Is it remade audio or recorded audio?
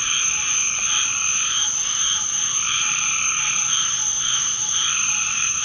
remade